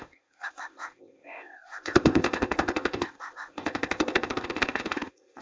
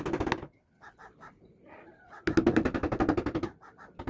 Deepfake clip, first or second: first